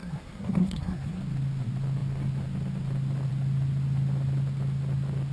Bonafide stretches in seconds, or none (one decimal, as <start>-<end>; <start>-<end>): 1.2-5.3